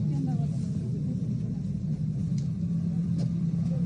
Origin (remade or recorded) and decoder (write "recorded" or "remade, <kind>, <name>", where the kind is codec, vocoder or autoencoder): recorded